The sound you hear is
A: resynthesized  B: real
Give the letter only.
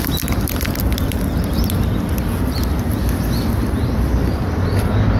A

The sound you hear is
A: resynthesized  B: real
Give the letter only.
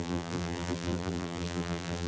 A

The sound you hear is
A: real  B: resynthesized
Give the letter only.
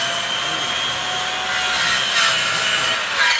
A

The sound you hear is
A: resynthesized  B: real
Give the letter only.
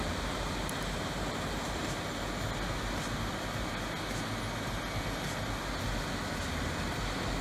B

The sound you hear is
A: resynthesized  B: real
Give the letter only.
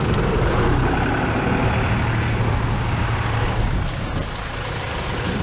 B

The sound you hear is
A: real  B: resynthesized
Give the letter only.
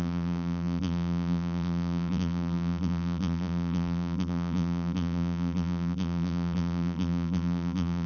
B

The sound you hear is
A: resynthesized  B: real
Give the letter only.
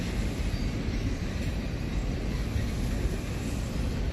B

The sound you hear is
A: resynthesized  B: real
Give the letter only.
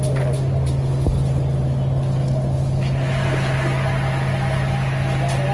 B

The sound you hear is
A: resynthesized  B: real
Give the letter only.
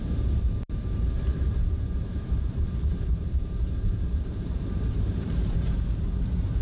A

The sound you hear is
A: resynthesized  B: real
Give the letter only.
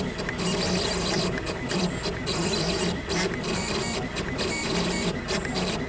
A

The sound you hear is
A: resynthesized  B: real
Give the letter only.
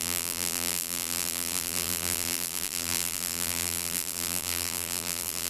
A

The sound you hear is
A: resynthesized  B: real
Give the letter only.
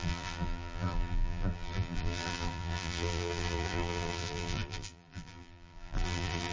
A